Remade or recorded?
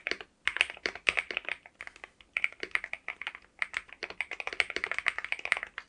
recorded